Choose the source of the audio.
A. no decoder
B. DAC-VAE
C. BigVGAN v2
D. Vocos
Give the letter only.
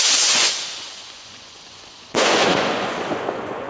D